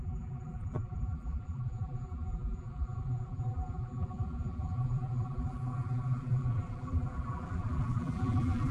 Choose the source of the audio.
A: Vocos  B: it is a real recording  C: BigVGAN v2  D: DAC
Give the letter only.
C